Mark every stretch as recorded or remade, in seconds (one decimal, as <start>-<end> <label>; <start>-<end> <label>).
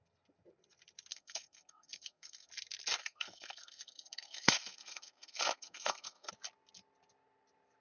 0.0-1.1 recorded; 1.1-2.5 remade; 2.5-3.0 recorded; 3.0-6.3 remade; 6.3-7.8 recorded